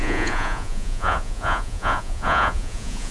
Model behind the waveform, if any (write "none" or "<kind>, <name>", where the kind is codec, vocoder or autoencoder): vocoder, Vocos